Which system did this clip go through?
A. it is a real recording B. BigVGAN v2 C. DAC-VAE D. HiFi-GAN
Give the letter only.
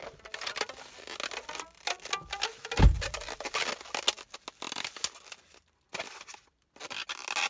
A